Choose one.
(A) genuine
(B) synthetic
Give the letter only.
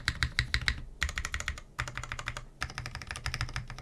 A